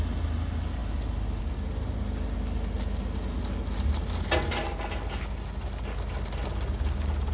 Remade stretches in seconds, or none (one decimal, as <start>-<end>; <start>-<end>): none